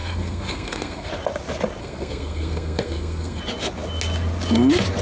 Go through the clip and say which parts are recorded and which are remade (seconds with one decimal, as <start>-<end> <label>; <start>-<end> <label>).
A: 0.0-1.1 remade; 1.1-1.8 recorded; 1.8-3.4 remade; 3.4-5.0 recorded